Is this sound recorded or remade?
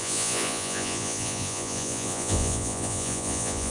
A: remade